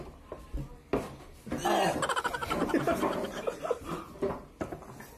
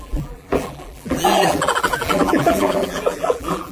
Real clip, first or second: first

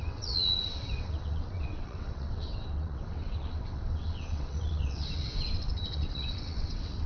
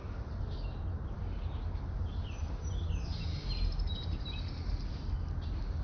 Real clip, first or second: second